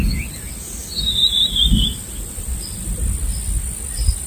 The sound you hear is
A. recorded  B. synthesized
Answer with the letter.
A